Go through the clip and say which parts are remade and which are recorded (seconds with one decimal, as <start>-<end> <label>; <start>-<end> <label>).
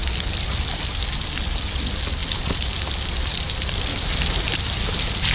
0.0-0.8 remade; 0.8-2.2 recorded; 2.2-4.6 remade; 4.6-5.3 recorded